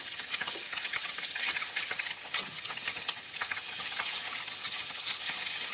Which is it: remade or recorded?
remade